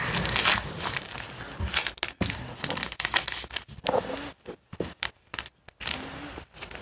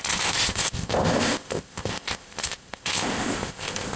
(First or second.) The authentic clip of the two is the first